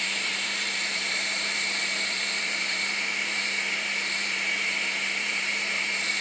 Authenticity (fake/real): fake